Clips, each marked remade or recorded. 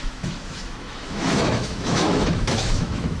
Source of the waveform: remade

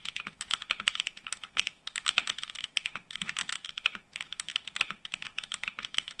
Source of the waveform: remade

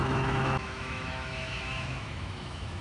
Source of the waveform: remade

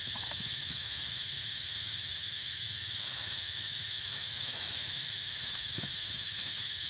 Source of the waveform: remade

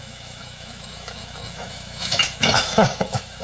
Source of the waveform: remade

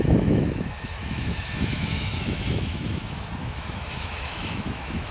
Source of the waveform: remade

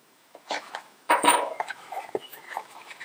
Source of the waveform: remade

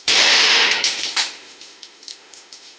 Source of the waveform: remade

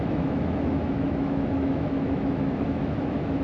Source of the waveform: remade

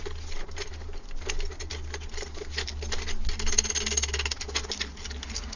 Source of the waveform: recorded